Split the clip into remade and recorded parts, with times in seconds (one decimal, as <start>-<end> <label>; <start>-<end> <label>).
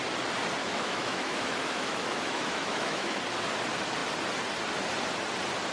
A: 0.0-0.6 recorded; 0.6-3.2 remade; 3.2-5.7 recorded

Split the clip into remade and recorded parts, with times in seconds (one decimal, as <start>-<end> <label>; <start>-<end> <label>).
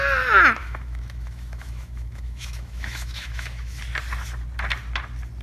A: 0.0-0.6 recorded; 0.6-3.8 remade; 3.8-5.4 recorded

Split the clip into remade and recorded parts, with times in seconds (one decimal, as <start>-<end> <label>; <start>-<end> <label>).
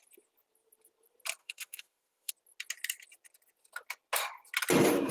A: 0.0-1.4 recorded; 1.4-2.3 remade; 2.3-5.1 recorded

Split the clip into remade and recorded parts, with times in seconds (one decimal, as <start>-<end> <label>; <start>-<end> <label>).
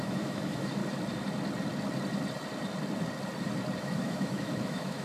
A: 0.0-0.8 remade; 0.8-3.8 recorded; 3.8-5.0 remade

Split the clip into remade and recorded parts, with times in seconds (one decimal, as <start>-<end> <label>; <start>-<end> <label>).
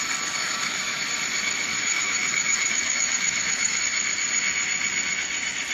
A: 0.0-0.4 recorded; 0.4-1.0 remade; 1.0-1.7 recorded; 1.7-3.8 remade; 3.8-5.7 recorded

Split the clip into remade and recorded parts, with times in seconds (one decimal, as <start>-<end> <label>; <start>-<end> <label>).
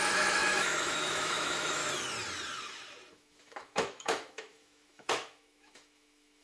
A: 0.0-1.8 remade; 1.8-3.1 recorded; 3.1-6.4 remade